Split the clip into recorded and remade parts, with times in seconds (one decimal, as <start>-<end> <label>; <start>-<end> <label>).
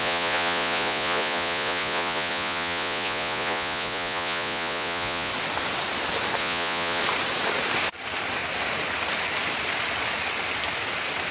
0.0-5.3 remade; 5.3-6.4 recorded; 6.4-7.0 remade; 7.0-11.3 recorded